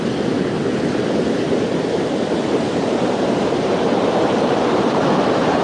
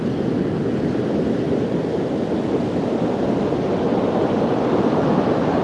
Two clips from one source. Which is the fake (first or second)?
first